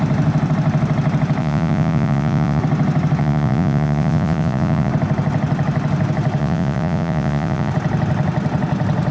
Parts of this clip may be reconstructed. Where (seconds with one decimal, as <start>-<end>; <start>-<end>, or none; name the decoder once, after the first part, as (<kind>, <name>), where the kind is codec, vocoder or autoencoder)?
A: 1.4-2.6 (vocoder, Vocos); 3.2-4.9; 6.4-7.7